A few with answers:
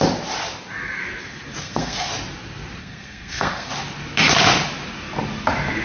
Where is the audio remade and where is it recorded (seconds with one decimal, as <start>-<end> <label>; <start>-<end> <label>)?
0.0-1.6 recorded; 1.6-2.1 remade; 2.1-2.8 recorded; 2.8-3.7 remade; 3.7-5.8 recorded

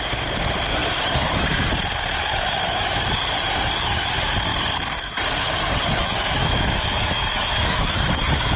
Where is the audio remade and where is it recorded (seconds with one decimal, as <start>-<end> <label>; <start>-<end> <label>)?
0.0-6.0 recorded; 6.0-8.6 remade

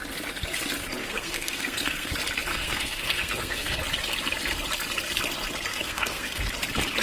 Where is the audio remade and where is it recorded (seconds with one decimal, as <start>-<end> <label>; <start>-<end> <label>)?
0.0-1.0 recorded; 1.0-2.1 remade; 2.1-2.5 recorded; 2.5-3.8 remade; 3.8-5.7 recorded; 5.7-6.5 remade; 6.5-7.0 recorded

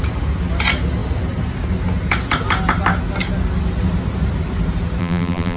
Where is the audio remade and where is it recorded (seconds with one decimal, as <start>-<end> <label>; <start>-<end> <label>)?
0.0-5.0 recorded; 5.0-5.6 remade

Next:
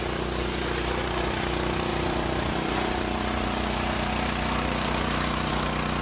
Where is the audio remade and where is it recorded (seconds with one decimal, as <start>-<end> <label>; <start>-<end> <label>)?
0.0-1.9 recorded; 1.9-5.5 remade; 5.5-6.0 recorded

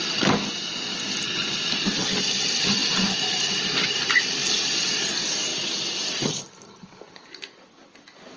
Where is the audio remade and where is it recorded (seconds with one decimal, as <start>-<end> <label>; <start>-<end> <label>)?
0.0-8.4 recorded

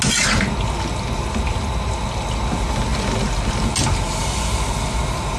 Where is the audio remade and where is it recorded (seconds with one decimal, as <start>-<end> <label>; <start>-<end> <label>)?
0.0-5.4 recorded